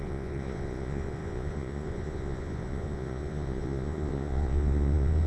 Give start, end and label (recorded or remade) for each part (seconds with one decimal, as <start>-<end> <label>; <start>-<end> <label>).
0.0-5.3 remade